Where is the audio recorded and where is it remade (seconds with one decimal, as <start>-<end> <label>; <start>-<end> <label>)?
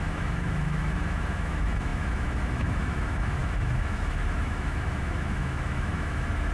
0.0-6.5 remade